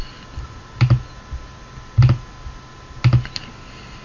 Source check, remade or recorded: recorded